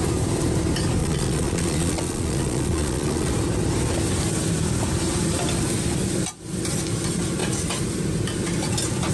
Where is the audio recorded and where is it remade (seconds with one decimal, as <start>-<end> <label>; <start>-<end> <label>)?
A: 0.0-1.0 recorded; 1.0-3.3 remade; 3.3-9.1 recorded